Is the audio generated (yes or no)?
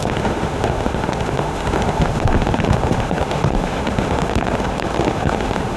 yes